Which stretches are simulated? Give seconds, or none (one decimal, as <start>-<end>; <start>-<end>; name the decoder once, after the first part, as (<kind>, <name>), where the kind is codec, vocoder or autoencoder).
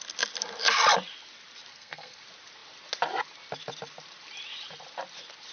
1.7-2.2 (codec, SNAC)